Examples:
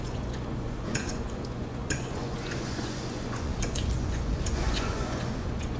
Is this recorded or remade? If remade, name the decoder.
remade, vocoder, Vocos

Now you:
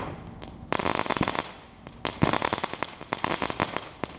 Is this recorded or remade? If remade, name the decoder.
recorded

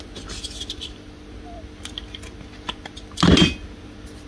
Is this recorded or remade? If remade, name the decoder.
recorded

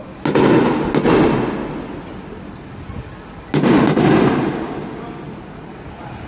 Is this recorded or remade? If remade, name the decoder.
recorded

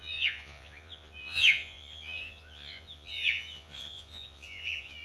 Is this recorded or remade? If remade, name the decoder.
remade, vocoder, Vocos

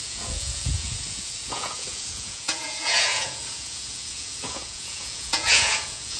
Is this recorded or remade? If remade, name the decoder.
remade, vocoder, Vocos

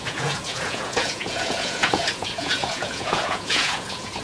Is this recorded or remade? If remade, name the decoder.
remade, vocoder, Vocos